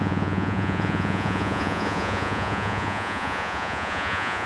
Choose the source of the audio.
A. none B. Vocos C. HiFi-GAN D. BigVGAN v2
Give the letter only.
B